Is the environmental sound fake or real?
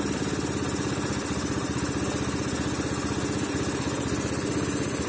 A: real